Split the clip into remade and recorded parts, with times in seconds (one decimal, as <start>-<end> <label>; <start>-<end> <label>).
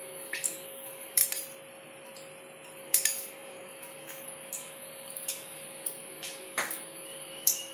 0.0-1.2 remade; 1.2-2.8 recorded; 2.8-7.7 remade